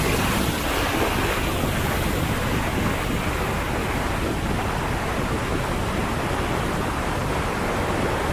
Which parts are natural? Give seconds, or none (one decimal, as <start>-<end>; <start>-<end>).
0.0-8.3